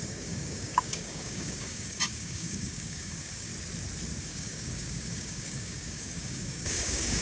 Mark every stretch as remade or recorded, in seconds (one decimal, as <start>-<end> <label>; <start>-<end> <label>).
0.0-3.5 remade; 3.5-4.2 recorded; 4.2-7.2 remade